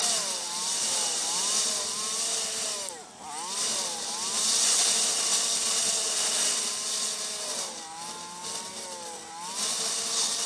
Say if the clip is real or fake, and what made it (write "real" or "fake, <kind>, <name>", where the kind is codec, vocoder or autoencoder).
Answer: real